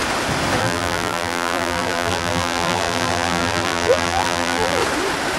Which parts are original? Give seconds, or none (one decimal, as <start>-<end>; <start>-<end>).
0.0-0.6; 4.8-5.4